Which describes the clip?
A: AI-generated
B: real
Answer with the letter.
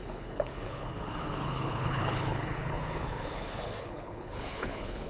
A